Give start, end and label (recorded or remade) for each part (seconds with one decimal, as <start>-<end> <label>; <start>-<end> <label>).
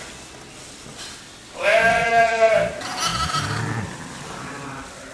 0.0-1.9 recorded; 1.9-2.5 remade; 2.5-5.1 recorded